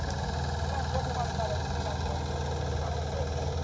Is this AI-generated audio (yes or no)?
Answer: no